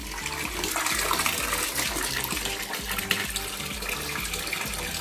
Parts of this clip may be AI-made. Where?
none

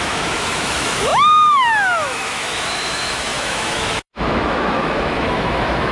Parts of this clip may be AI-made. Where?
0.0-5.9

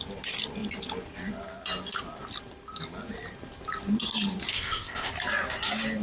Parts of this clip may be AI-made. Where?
4.5-5.1

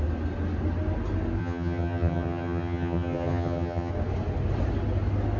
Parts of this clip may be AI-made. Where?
1.4-3.9

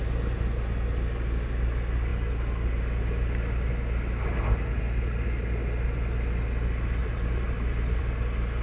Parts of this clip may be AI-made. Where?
7.0-8.0

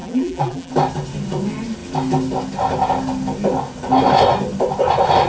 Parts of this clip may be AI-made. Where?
0.0-0.7

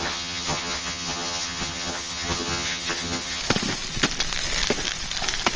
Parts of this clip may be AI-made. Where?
0.0-3.4

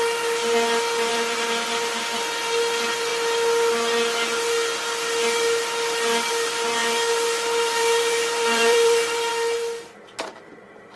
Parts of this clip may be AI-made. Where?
1.1-1.9; 6.8-9.3